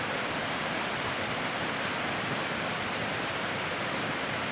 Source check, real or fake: real